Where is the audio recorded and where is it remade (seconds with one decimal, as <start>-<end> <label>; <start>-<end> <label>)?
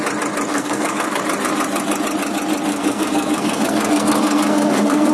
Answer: 0.0-0.5 recorded; 0.5-1.2 remade; 1.2-2.7 recorded; 2.7-5.1 remade